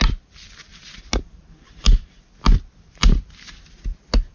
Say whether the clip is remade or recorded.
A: recorded